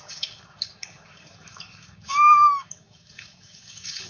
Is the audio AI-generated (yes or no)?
yes